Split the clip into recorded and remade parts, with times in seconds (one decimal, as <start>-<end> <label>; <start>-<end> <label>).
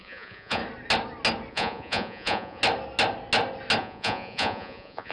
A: 0.0-0.6 remade; 0.6-1.5 recorded; 1.5-2.6 remade; 2.6-3.8 recorded; 3.8-5.1 remade